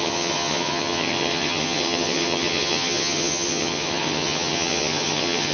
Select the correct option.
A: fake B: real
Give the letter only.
A